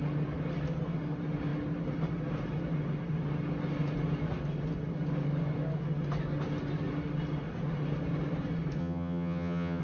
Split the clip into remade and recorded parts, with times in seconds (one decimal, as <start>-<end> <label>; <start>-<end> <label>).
0.0-8.8 recorded; 8.8-9.8 remade